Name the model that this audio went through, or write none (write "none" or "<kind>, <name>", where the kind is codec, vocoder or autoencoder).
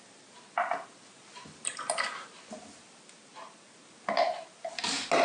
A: none